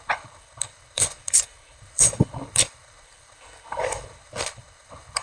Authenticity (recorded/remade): remade